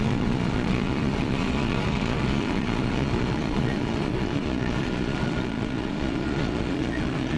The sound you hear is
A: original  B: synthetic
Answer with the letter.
B